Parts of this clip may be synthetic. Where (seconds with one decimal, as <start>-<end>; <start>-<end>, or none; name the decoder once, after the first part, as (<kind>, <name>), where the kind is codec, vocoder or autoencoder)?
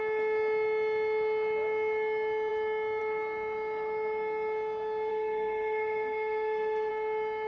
5.1-6.9 (codec, SNAC)